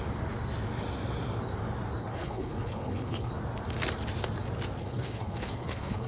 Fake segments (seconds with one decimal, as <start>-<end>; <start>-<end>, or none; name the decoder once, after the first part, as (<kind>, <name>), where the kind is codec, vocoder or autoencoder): 2.0-3.3 (codec, HILCodec); 4.8-6.1